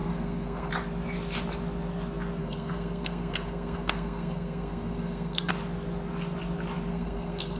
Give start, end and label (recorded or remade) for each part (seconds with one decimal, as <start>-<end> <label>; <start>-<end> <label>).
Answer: 0.0-0.7 remade; 0.7-2.4 recorded; 2.4-5.5 remade; 5.5-6.9 recorded; 6.9-7.6 remade